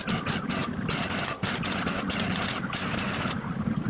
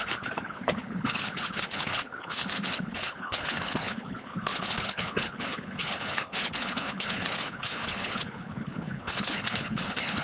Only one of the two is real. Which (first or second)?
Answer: first